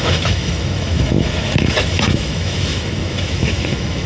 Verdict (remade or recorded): remade